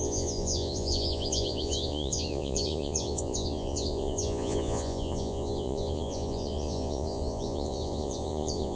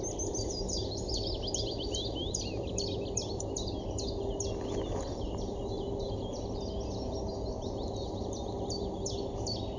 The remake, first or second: first